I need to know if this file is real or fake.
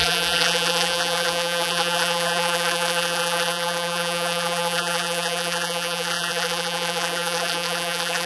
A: fake